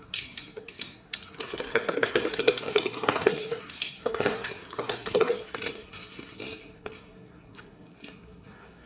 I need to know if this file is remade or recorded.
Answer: remade